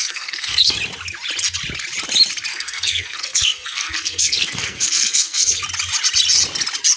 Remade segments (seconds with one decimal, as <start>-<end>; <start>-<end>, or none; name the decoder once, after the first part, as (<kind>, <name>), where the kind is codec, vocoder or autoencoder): 0.0-0.8 (codec, SNAC); 2.5-5.6